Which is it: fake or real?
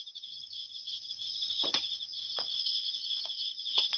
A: fake